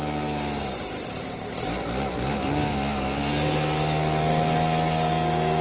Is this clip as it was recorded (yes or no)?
yes